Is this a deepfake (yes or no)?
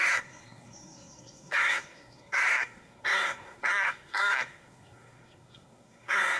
yes